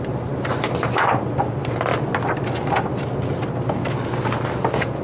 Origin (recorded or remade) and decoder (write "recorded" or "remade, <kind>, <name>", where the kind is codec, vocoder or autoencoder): recorded